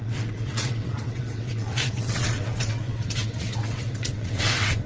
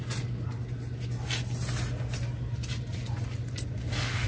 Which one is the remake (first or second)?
first